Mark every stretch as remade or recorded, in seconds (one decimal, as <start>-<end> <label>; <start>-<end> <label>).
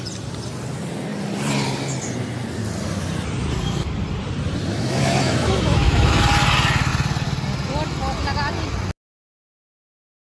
0.0-4.7 recorded; 4.7-6.2 remade; 6.2-10.3 recorded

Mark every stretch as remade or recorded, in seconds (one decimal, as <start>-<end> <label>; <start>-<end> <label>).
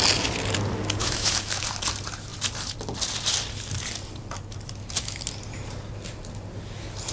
0.0-1.0 recorded; 1.0-1.6 remade; 1.6-7.1 recorded